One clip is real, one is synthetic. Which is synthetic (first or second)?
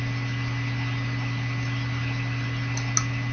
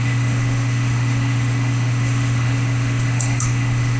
second